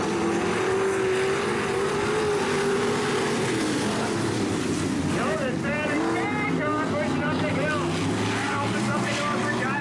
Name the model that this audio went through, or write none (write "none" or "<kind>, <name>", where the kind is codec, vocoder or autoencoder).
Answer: none